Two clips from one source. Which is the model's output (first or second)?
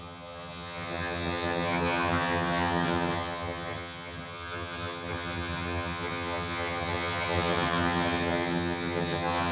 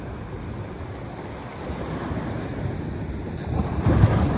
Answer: first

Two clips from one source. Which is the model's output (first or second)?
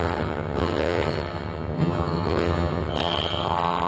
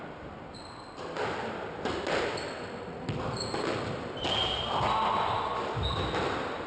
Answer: first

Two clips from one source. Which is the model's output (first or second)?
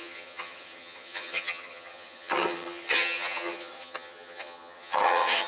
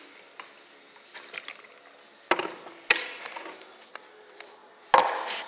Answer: first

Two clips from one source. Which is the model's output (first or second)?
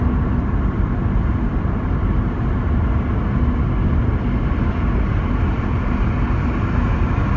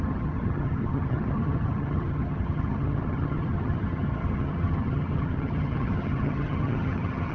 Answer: second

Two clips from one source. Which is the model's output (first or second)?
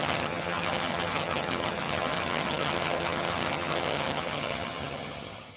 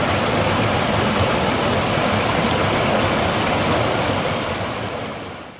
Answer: first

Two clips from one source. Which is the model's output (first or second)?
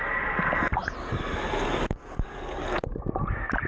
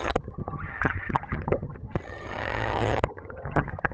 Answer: second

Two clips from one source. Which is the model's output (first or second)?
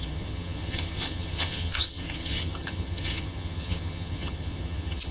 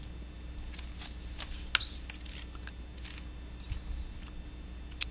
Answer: first